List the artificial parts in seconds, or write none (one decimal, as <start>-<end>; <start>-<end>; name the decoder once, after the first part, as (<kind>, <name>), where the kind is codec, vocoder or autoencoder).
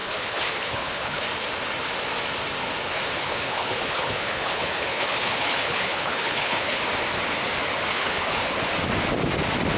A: 0.0-1.2 (codec, HILCodec); 2.9-6.8; 7.9-8.6